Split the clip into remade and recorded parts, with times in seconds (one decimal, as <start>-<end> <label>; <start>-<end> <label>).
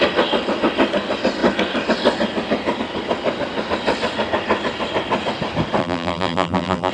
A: 0.0-5.8 recorded; 5.8-6.9 remade